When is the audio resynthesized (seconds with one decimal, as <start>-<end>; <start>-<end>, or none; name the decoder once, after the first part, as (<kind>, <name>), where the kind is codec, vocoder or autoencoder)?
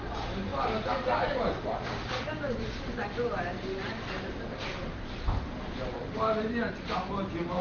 0.0-7.6 (vocoder, BigVGAN v2)